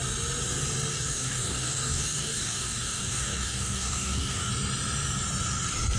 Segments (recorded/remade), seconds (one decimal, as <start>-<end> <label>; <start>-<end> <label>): 0.0-0.9 recorded; 0.9-4.5 remade; 4.5-6.0 recorded

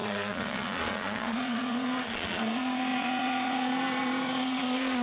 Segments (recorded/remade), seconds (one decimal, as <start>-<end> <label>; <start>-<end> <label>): 0.0-5.0 remade

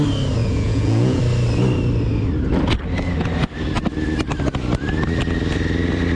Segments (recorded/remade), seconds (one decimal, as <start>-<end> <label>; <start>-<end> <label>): 0.0-0.4 recorded; 0.4-1.2 remade; 1.2-6.2 recorded

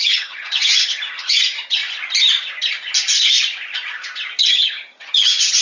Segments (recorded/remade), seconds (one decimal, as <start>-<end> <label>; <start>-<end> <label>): 0.0-1.8 remade; 1.8-4.5 recorded; 4.5-5.6 remade